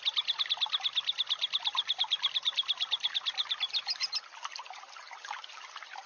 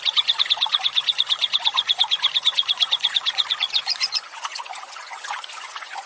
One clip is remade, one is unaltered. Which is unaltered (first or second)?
first